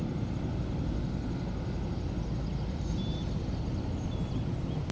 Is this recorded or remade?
recorded